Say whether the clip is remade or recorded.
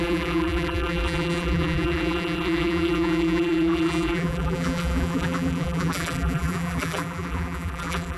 remade